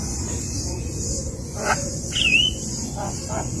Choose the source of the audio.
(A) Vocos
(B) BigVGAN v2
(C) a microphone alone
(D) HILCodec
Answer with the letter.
A